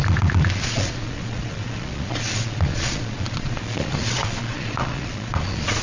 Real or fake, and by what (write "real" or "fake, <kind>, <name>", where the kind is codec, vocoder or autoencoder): fake, vocoder, Vocos